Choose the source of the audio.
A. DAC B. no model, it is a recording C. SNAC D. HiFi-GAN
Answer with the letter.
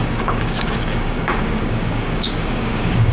A